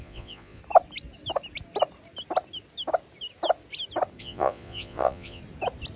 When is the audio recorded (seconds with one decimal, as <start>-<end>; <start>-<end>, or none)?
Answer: 0.6-4.2; 5.4-6.0